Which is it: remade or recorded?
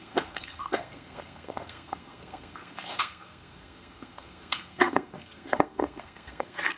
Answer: remade